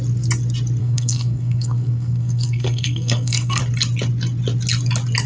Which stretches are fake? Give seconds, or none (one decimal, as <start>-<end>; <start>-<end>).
0.8-3.6